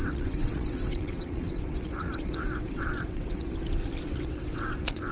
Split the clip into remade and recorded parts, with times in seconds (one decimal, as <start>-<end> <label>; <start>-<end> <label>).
0.0-3.5 remade; 3.5-4.0 recorded; 4.0-5.1 remade